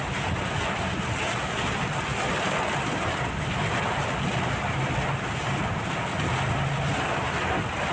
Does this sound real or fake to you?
real